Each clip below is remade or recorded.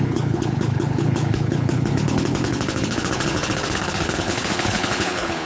remade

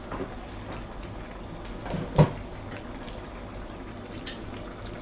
recorded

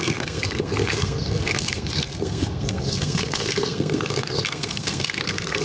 remade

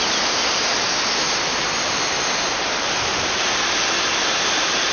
recorded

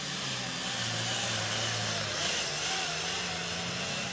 recorded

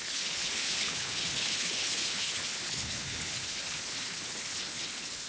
remade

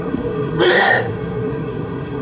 remade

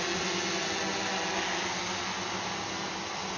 recorded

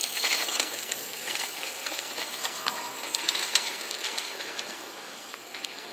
remade